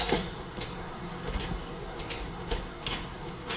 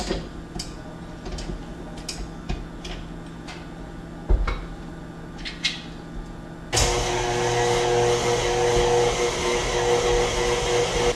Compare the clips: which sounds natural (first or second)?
second